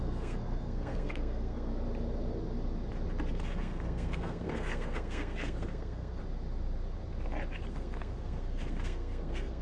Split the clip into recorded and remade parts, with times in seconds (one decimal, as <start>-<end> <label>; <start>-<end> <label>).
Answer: 0.0-1.7 remade; 1.7-3.3 recorded; 3.3-6.2 remade; 6.2-7.7 recorded; 7.7-9.6 remade